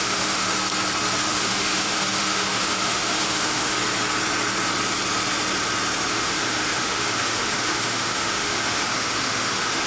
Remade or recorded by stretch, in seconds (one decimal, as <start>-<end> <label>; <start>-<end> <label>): 0.0-0.5 remade; 0.5-1.2 recorded; 1.2-3.8 remade; 3.8-6.1 recorded; 6.1-9.9 remade